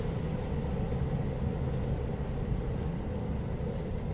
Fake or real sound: real